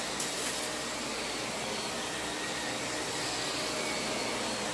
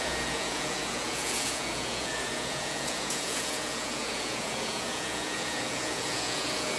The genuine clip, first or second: first